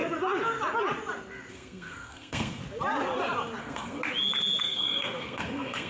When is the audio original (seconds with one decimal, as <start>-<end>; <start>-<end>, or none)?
0.0-1.5; 2.6-3.6; 4.0-4.6